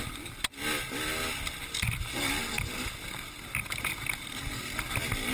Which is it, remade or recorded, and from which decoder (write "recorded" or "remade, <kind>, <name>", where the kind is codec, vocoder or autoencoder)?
recorded